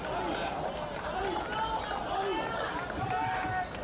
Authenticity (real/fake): real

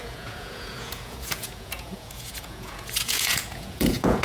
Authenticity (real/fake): fake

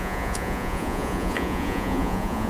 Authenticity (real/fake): fake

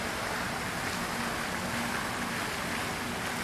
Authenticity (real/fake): real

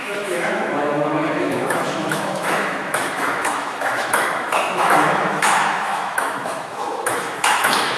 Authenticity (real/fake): fake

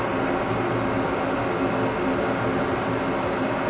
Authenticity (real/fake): real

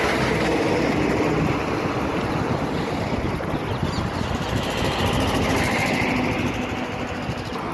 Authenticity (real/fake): real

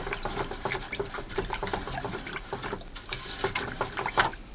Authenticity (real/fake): real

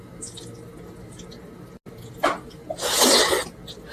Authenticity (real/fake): real